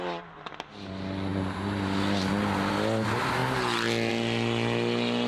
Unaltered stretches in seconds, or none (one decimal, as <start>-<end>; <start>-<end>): 0.0-5.3